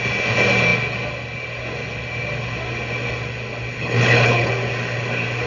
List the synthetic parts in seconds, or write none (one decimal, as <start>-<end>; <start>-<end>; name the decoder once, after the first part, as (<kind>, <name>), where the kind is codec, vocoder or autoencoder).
3.7-4.5 (codec, HILCodec)